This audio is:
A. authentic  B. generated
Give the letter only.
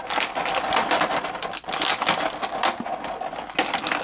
A